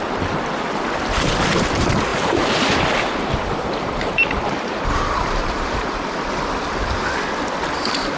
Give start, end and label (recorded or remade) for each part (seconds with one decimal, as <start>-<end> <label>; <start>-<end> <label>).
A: 0.0-2.1 recorded; 2.1-6.0 remade; 6.0-8.2 recorded